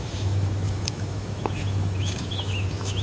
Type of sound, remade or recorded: remade